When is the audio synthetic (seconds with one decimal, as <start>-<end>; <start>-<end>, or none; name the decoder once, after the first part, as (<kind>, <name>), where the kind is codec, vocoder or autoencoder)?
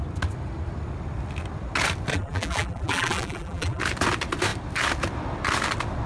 2.1-3.8 (vocoder, BigVGAN v2)